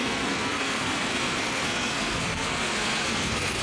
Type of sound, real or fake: fake